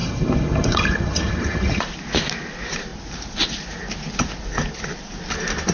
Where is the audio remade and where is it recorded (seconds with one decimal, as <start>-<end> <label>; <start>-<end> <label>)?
0.0-1.8 remade; 1.8-5.7 recorded